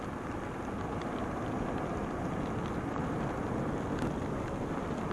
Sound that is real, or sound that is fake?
real